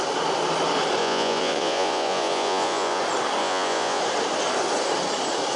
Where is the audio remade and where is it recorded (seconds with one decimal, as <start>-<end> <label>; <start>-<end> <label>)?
0.0-1.0 recorded; 1.0-3.0 remade; 3.0-3.4 recorded; 3.4-4.0 remade; 4.0-5.6 recorded